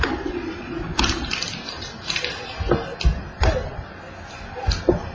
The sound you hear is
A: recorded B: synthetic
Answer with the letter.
A